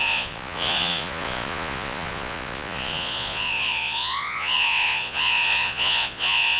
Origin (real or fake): fake